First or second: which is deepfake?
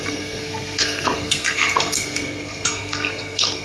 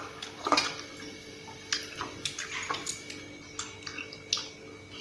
first